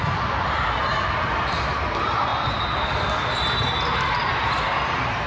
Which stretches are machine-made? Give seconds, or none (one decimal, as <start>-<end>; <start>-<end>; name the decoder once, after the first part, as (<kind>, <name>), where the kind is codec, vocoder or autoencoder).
none